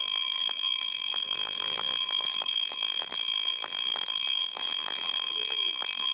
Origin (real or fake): fake